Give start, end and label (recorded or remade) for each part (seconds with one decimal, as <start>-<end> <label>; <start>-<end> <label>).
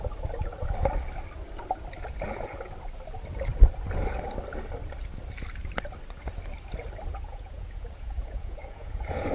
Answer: 0.0-7.1 recorded; 7.1-9.3 remade